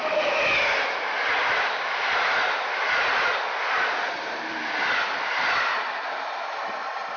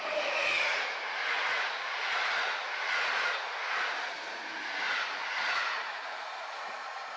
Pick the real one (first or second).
first